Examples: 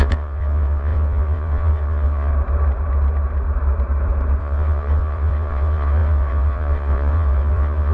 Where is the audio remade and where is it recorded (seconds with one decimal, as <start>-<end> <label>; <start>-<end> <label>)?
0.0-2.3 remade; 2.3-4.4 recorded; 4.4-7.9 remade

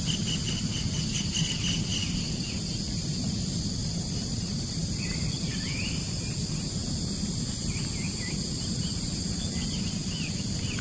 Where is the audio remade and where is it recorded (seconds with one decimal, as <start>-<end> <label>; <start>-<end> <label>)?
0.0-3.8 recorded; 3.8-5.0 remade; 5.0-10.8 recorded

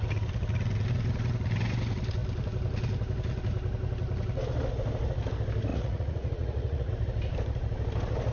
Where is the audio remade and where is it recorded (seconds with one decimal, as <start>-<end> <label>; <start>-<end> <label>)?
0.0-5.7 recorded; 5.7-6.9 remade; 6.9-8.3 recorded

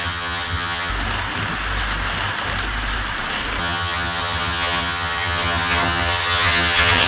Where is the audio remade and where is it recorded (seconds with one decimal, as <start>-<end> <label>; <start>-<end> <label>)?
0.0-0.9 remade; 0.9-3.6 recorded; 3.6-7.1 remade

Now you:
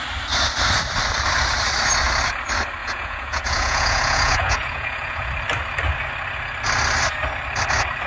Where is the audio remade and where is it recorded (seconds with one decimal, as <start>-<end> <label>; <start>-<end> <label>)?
0.0-2.8 recorded; 2.8-5.3 remade; 5.3-8.1 recorded

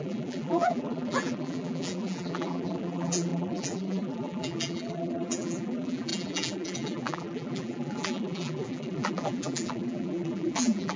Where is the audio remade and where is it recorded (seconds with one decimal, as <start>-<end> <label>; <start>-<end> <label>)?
0.0-11.0 remade

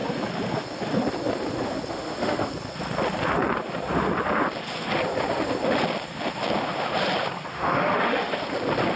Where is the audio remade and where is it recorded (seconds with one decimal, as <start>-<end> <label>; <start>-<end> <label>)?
0.0-1.9 recorded; 1.9-2.5 remade; 2.5-7.5 recorded; 7.5-8.3 remade; 8.3-9.0 recorded